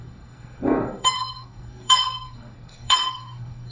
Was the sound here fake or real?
fake